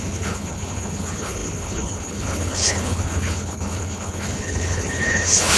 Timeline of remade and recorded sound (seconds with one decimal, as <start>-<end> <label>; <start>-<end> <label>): 0.0-5.6 remade